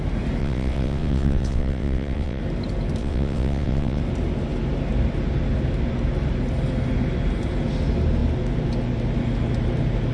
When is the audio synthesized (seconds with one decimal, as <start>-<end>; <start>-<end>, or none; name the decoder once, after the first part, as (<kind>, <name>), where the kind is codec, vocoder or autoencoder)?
0.4-2.4 (vocoder, WaveNeXt); 3.0-4.0